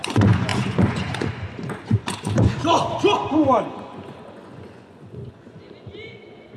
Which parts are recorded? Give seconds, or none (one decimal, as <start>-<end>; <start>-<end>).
2.6-3.4